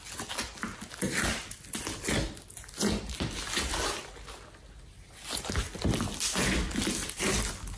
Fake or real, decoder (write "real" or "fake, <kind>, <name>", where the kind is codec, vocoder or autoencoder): real